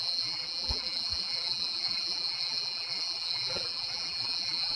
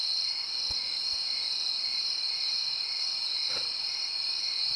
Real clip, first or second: second